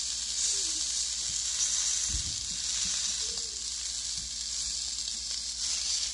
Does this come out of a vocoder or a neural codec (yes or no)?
no